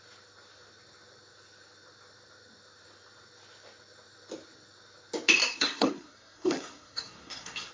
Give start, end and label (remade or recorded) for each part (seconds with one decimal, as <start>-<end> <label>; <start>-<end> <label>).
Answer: 0.0-5.4 recorded; 5.4-7.7 remade